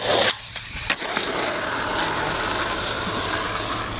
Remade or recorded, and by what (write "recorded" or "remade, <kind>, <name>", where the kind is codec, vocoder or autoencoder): recorded